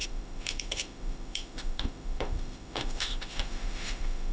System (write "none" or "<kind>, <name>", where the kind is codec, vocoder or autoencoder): autoencoder, DAC-VAE